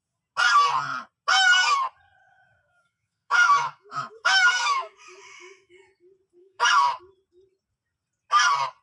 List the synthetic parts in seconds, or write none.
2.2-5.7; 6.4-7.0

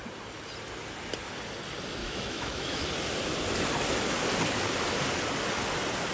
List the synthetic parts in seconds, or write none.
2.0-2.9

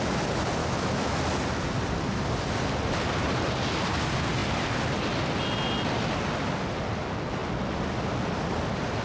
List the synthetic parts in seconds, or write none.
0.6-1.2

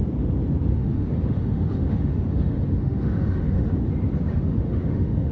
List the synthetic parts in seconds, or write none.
0.7-3.9; 4.3-5.3

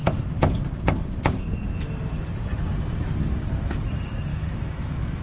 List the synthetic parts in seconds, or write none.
4.3-5.2

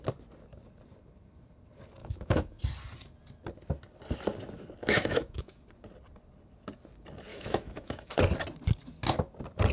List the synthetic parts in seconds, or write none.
2.0-2.6; 4.8-5.6; 7.3-8.2

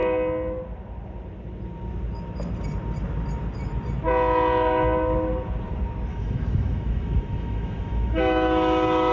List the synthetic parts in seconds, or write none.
6.1-9.1